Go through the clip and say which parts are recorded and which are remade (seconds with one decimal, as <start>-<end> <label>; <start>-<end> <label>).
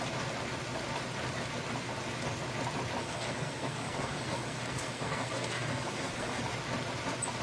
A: 0.0-3.0 recorded; 3.0-6.4 remade; 6.4-7.4 recorded